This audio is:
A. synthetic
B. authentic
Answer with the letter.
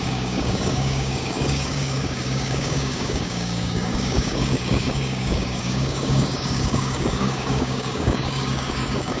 A